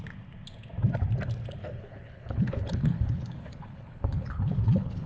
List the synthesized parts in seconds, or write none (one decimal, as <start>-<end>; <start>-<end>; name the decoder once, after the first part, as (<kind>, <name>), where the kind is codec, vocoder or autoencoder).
1.6-5.1 (codec, HILCodec)